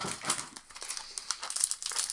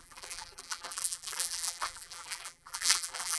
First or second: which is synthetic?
second